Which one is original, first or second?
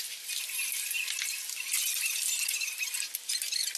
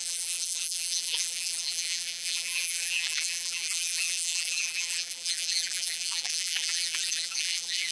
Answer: first